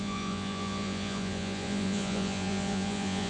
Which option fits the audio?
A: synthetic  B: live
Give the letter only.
A